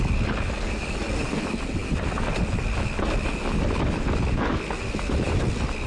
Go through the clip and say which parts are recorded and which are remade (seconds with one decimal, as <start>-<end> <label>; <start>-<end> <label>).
0.0-5.9 recorded